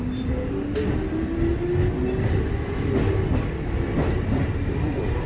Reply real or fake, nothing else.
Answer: real